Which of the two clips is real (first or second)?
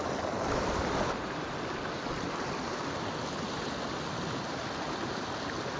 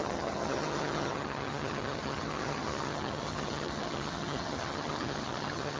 first